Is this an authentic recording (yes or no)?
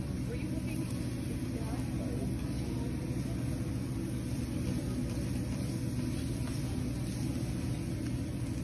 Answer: yes